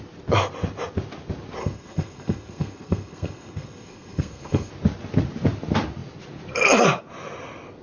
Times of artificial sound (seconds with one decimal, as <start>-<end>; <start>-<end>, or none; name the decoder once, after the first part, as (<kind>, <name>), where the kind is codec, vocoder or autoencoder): 1.6-4.7 (codec, SNAC)